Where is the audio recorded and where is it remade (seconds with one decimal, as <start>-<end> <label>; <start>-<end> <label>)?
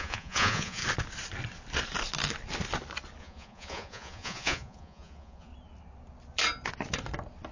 0.0-0.8 remade; 0.8-3.2 recorded; 3.2-5.5 remade; 5.5-7.5 recorded